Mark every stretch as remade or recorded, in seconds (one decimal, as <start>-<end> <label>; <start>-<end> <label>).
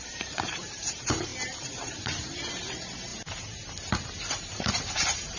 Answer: 0.0-3.1 remade; 3.1-4.3 recorded; 4.3-5.4 remade